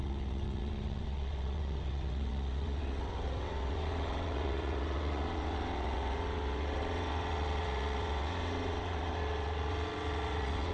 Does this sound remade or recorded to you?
remade